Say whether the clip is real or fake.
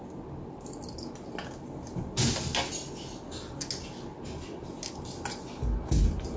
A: real